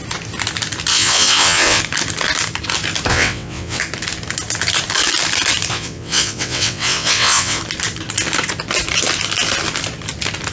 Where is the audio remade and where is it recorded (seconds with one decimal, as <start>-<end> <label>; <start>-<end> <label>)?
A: 0.0-0.9 recorded; 0.9-1.8 remade; 1.8-3.1 recorded; 3.1-3.8 remade; 3.8-5.7 recorded; 5.7-7.6 remade; 7.6-10.5 recorded